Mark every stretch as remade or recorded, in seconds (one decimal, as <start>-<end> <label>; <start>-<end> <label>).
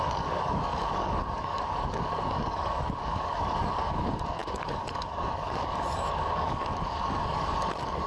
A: 0.0-8.1 remade